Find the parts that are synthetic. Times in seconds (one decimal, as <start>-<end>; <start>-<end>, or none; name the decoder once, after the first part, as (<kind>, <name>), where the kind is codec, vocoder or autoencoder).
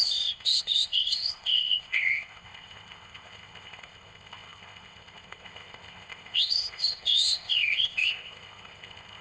0.0-9.2 (codec, ZipCodec)